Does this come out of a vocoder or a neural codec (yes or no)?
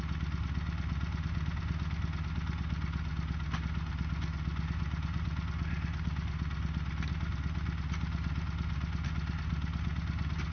no